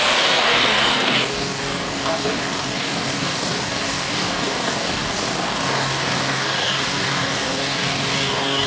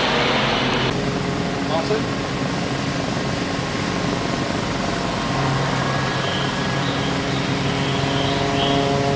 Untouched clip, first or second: second